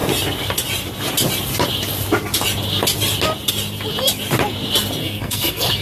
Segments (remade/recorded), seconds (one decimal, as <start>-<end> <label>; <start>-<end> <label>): 0.0-5.0 recorded; 5.0-5.8 remade